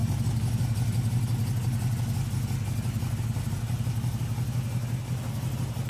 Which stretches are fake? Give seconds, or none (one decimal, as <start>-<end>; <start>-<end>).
none